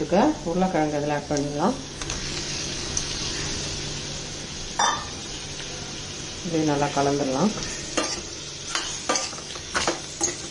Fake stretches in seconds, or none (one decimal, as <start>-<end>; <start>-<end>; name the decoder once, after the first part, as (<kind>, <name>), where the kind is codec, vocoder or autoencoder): 1.2-3.3 (codec, DAC); 9.2-10.0